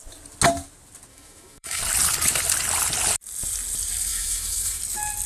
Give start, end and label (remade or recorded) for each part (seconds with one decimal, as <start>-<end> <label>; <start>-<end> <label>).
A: 0.0-1.1 recorded; 1.1-1.8 remade; 1.8-4.1 recorded; 4.1-4.8 remade; 4.8-5.3 recorded